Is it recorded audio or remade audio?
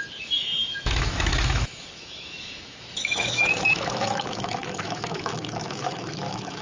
remade